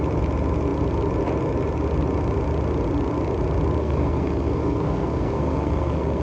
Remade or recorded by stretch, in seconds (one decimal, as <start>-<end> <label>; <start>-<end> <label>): 0.0-3.8 recorded; 3.8-6.2 remade